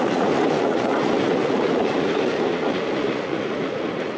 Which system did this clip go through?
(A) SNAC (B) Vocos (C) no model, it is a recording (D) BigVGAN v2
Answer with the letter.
B